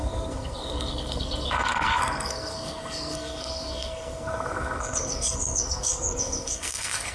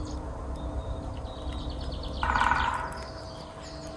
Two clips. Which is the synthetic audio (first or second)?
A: first